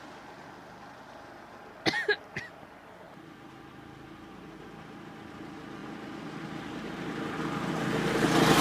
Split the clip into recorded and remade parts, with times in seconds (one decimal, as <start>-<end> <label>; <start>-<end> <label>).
0.0-8.6 recorded